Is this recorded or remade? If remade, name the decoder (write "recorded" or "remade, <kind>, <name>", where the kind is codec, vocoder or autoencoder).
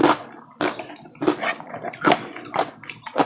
recorded